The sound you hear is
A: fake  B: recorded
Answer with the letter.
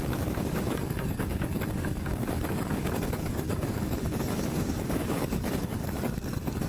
A